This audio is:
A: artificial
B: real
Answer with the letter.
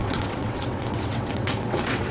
A